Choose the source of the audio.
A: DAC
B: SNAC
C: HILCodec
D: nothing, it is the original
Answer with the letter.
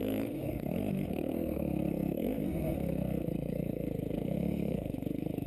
B